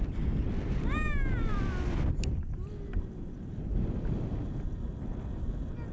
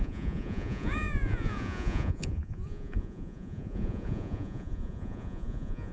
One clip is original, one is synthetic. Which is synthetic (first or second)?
second